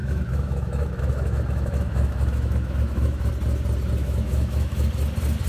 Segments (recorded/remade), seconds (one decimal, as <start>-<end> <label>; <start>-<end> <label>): 0.0-3.3 remade; 3.3-4.0 recorded; 4.0-4.9 remade; 4.9-5.5 recorded